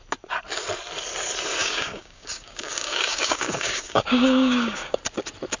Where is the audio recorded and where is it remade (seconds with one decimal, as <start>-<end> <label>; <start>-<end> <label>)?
0.0-1.6 recorded; 1.6-5.0 remade; 5.0-5.6 recorded